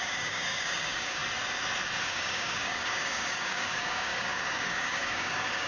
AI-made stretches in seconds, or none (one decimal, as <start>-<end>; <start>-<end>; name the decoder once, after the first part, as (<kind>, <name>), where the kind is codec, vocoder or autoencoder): 0.0-1.2 (codec, DAC); 2.0-5.7